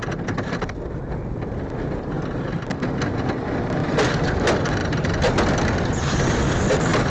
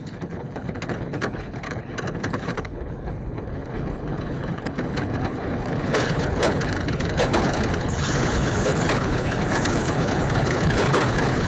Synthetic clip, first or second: second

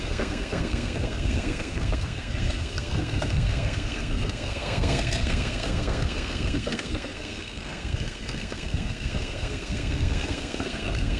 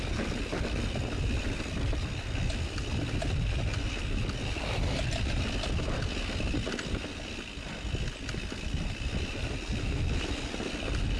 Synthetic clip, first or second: first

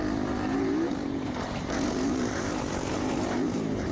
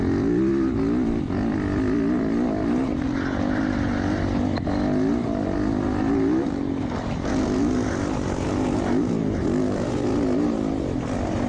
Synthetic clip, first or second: first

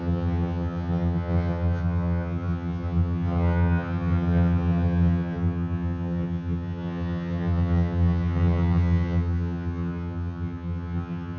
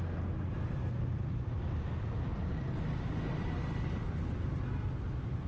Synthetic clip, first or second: first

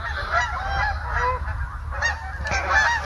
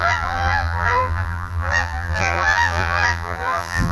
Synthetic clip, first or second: second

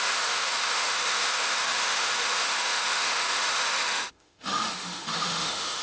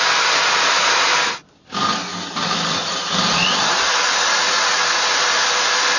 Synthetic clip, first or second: first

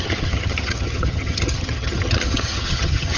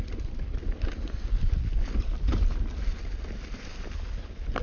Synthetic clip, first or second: first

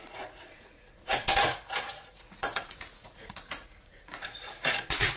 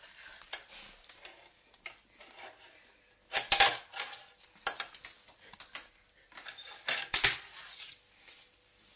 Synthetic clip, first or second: first